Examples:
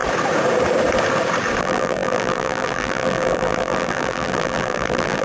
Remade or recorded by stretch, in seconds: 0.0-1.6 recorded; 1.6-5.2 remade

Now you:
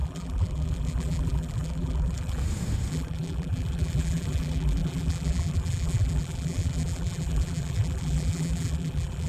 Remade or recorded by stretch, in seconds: 0.0-2.4 remade; 2.4-2.9 recorded; 2.9-9.3 remade

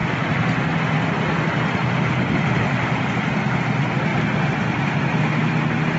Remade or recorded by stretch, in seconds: 0.0-3.6 remade; 3.6-4.1 recorded; 4.1-5.2 remade; 5.2-6.0 recorded

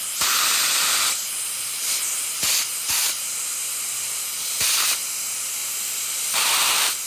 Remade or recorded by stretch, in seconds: 0.0-5.6 recorded; 5.6-7.1 remade